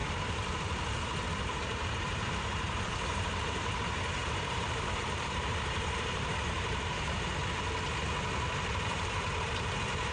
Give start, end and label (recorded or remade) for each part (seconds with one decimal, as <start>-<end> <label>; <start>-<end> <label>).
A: 0.0-7.4 remade; 7.4-8.7 recorded; 8.7-10.1 remade